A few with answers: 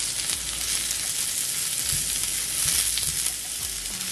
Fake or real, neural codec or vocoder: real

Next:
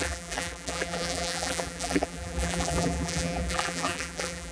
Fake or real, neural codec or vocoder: fake, vocoder, BigVGAN v2